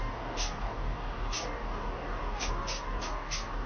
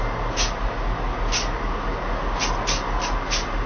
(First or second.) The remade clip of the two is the first